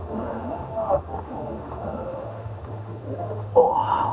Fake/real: fake